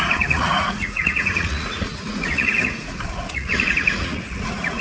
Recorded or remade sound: remade